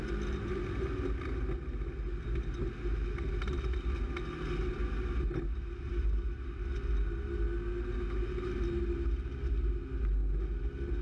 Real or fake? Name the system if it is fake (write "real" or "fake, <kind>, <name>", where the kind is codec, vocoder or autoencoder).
real